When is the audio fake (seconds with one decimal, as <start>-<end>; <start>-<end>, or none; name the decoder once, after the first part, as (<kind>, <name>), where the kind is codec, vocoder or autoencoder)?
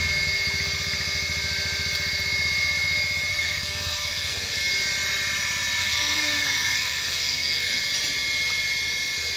3.3-4.6 (codec, SNAC); 5.8-7.8